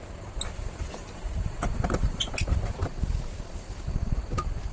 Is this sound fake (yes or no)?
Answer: no